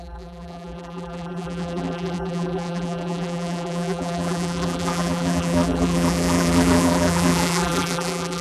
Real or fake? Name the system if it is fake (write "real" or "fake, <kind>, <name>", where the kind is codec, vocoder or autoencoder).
fake, vocoder, BigVGAN v2